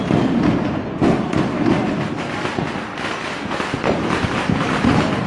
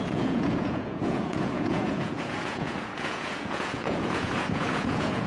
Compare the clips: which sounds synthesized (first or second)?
second